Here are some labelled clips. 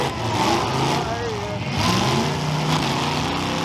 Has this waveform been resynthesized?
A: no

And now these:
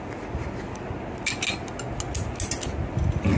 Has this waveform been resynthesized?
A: no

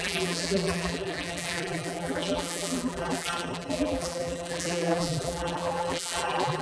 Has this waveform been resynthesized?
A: yes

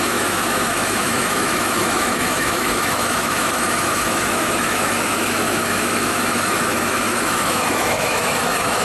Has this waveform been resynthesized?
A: yes